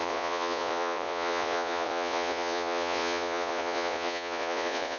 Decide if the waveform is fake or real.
fake